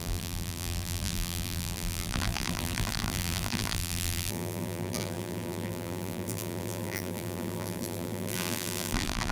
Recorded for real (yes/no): no